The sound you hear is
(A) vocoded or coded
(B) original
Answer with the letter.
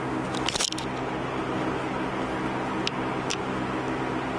B